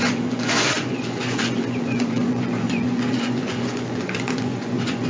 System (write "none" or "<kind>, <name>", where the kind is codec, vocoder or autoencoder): vocoder, Vocos